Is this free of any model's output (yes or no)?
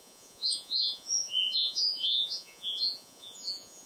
no